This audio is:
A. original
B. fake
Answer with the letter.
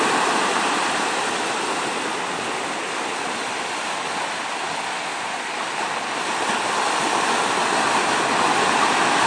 A